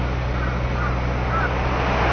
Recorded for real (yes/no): yes